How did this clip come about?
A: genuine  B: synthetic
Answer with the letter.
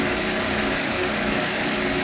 B